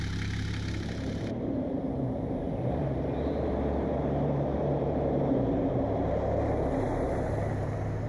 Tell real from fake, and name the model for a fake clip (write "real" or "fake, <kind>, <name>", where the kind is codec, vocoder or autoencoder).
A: fake, vocoder, BigVGAN v2